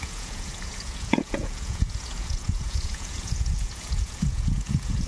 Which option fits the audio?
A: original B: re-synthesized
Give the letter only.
B